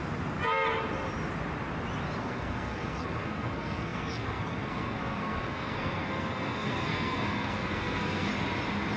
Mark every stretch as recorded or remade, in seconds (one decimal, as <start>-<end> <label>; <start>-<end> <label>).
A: 0.0-2.2 recorded; 2.2-8.3 remade; 8.3-9.0 recorded

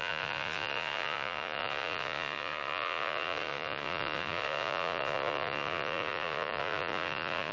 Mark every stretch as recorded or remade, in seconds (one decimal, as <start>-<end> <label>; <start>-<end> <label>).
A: 0.0-7.5 remade

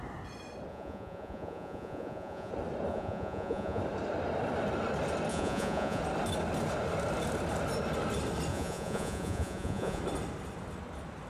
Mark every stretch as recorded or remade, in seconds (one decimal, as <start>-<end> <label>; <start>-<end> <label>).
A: 0.0-0.7 recorded; 0.7-2.5 remade; 2.5-2.9 recorded; 2.9-3.8 remade; 3.8-5.3 recorded; 5.3-6.0 remade; 6.0-8.5 recorded; 8.5-10.0 remade; 10.0-11.3 recorded

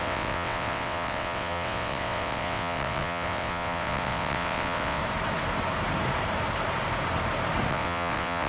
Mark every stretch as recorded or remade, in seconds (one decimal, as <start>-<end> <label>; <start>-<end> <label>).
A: 0.0-5.0 remade; 5.0-7.7 recorded; 7.7-8.5 remade

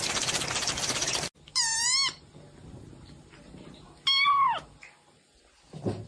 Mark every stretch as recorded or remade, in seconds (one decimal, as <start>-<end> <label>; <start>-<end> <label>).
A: 0.0-6.1 recorded